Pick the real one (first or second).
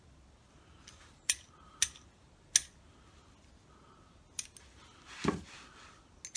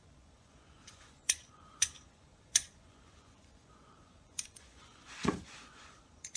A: first